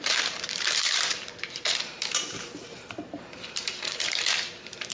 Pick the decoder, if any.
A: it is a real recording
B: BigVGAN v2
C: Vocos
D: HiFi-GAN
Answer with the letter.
B